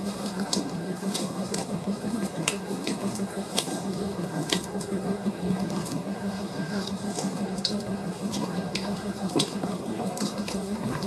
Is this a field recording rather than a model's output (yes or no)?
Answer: no